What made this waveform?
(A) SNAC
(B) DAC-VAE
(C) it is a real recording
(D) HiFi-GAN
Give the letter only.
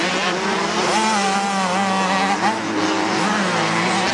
C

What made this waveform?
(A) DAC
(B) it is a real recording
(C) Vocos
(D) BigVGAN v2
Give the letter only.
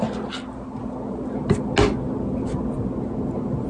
B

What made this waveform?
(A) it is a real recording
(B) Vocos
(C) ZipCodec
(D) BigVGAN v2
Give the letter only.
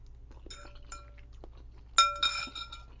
A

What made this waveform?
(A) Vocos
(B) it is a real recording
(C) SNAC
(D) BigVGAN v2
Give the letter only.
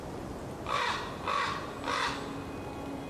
B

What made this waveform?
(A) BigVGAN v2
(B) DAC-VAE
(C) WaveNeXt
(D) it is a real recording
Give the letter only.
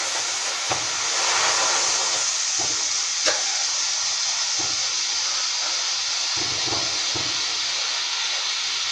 D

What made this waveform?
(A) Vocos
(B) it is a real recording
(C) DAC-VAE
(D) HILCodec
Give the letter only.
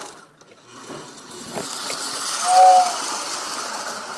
B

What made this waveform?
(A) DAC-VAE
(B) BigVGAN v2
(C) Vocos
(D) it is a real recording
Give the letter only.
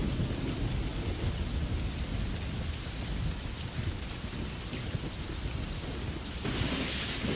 D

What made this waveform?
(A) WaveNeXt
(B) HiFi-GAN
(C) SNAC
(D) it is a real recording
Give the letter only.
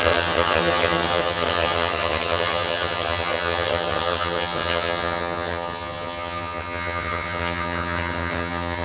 B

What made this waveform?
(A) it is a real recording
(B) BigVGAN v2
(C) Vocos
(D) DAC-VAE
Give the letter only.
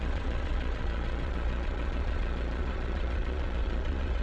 C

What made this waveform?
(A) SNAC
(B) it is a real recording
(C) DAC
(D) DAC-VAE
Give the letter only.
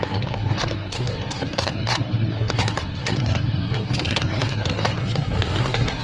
A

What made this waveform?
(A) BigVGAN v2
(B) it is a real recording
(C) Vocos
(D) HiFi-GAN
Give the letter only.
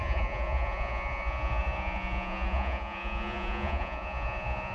C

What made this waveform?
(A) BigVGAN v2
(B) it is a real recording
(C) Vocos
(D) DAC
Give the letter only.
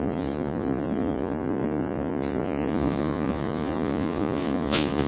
C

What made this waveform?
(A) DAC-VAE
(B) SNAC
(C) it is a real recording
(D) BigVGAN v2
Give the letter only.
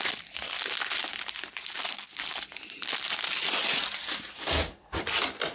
C